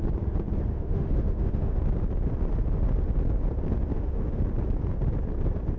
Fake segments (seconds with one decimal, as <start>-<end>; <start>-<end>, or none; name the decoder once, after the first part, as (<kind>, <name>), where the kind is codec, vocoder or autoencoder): 0.7-1.8 (autoencoder, DAC-VAE); 3.9-4.4